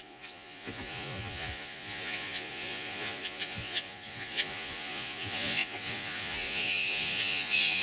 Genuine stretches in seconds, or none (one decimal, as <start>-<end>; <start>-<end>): none